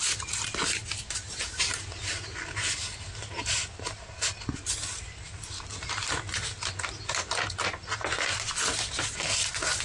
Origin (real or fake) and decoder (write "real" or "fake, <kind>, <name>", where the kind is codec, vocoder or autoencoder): real